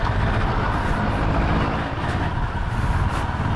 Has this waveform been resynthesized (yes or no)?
no